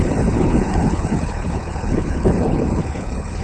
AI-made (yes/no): yes